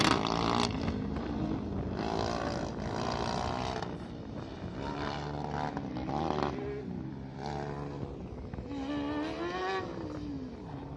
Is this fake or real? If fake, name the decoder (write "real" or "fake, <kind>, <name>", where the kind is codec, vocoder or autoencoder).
real